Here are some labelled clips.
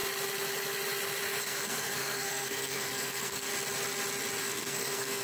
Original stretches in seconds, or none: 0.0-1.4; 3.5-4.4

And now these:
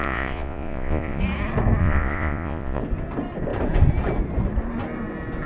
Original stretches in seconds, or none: 1.2-1.8; 2.8-5.5

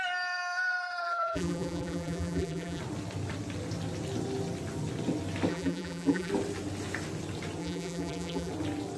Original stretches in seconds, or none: 0.0-1.0; 2.8-5.5; 6.3-7.6; 8.5-9.0